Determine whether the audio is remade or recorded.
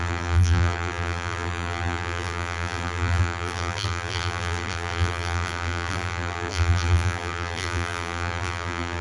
remade